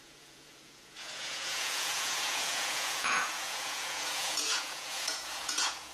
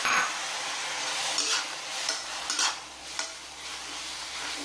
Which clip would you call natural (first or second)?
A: second